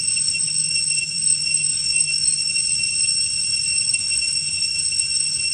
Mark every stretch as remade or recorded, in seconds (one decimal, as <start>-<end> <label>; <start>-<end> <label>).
0.0-2.5 remade; 2.5-3.9 recorded; 3.9-5.5 remade